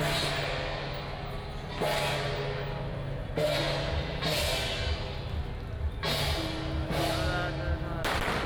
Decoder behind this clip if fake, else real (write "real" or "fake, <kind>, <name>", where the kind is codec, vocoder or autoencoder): real